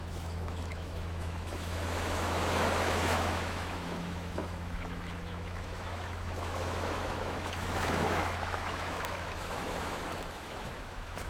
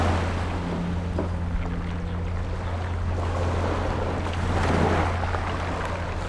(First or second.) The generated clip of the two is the first